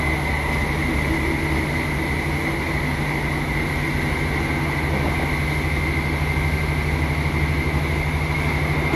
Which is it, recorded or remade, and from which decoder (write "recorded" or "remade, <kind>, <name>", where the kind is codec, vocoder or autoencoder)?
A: recorded